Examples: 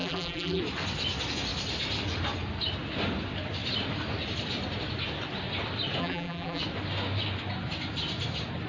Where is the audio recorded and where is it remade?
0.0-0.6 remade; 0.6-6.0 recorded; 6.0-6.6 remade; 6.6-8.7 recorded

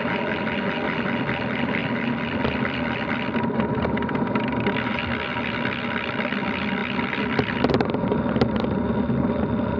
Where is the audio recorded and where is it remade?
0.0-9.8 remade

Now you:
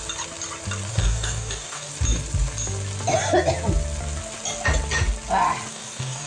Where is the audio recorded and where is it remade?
0.0-0.9 recorded; 0.9-1.9 remade; 1.9-5.7 recorded; 5.7-6.3 remade

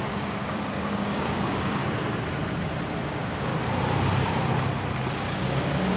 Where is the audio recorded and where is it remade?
0.0-1.8 remade; 1.8-3.1 recorded; 3.1-3.5 remade; 3.5-5.1 recorded; 5.1-6.0 remade

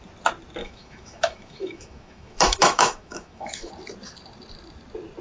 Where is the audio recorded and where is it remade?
0.0-0.6 recorded; 0.6-3.7 remade; 3.7-5.2 recorded

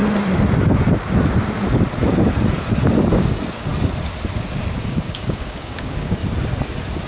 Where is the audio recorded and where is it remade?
0.0-3.1 recorded; 3.1-3.7 remade; 3.7-4.8 recorded; 4.8-6.2 remade; 6.2-7.1 recorded